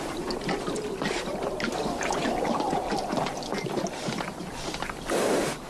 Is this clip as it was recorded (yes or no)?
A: yes